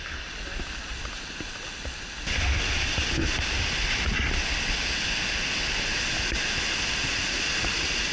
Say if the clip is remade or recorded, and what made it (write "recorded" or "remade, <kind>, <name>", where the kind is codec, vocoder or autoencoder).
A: recorded